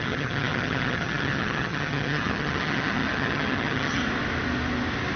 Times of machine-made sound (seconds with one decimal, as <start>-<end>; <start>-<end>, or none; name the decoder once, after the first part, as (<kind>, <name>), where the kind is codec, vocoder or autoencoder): 0.0-4.0 (vocoder, HiFi-GAN)